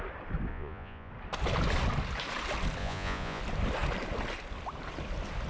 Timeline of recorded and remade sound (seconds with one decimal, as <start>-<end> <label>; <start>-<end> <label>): 0.0-0.5 recorded; 0.5-1.1 remade; 1.1-2.8 recorded; 2.8-3.4 remade; 3.4-5.5 recorded